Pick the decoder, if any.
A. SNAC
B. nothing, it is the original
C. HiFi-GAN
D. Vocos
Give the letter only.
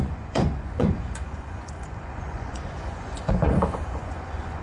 D